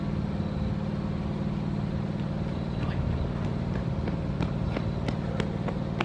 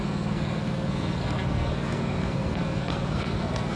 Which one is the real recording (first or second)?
first